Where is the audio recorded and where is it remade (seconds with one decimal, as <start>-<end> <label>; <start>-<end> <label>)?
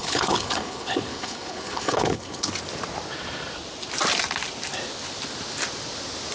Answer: 0.0-2.5 remade; 2.5-6.3 recorded